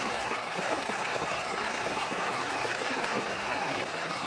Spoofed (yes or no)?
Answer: yes